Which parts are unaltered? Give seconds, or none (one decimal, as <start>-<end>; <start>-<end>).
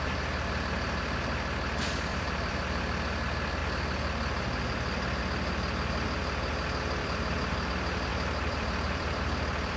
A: 0.0-2.1; 2.8-7.0; 7.7-8.1